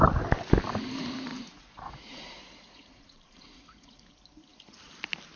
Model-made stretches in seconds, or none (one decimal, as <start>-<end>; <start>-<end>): 1.3-4.1